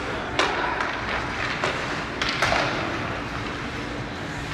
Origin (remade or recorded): recorded